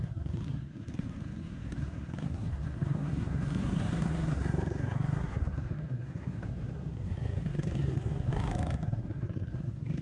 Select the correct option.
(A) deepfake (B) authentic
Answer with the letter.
A